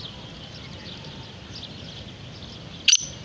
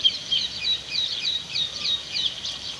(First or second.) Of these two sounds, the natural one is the first